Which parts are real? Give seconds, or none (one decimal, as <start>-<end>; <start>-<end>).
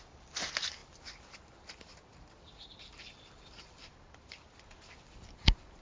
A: 0.0-0.8; 4.3-5.8